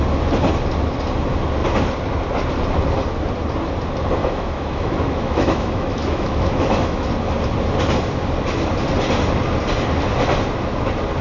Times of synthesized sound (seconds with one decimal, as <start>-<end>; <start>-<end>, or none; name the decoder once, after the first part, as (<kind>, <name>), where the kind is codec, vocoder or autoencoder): 4.2-7.1 (autoencoder, DAC-VAE)

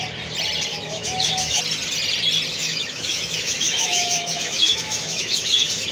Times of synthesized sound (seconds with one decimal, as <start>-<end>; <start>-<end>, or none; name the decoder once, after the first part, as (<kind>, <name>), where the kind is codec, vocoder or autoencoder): 0.7-1.6 (autoencoder, DAC-VAE); 2.5-5.9

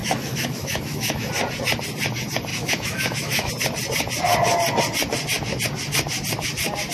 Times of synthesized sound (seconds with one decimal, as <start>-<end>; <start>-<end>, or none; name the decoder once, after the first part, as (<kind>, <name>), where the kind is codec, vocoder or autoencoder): 0.0-1.3 (autoencoder, DAC-VAE); 2.5-3.5

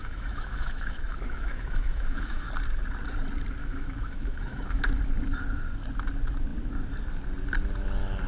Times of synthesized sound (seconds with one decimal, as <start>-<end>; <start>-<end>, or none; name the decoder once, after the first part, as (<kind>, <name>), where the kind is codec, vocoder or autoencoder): 0.0-2.5 (autoencoder, DAC-VAE); 3.6-4.9

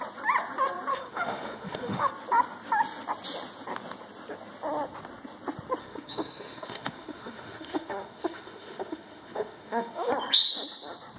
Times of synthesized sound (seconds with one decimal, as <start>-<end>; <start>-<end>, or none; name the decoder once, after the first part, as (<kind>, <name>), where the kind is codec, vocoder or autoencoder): 0.9-2.1 (autoencoder, DAC-VAE); 5.8-10.1

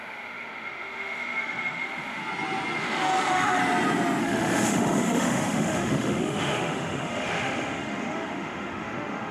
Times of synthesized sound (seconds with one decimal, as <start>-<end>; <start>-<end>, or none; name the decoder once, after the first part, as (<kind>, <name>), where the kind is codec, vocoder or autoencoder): 0.0-2.2 (autoencoder, DAC-VAE); 2.8-3.6; 4.2-9.3

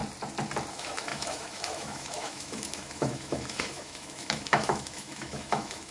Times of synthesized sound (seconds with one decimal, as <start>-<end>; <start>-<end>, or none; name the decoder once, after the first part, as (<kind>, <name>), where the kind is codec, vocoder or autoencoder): 0.7-5.9 (autoencoder, DAC-VAE)